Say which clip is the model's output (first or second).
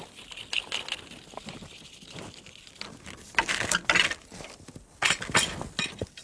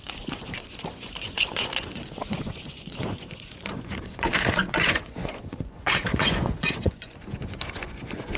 second